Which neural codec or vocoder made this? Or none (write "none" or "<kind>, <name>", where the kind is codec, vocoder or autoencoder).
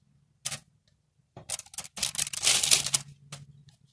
none